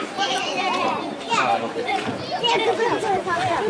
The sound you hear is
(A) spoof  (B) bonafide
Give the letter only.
B